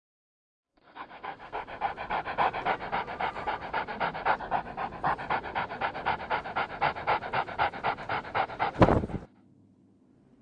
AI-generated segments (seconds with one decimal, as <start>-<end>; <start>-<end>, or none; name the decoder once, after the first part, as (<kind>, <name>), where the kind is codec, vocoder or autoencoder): 0.7-1.6 (codec, SNAC)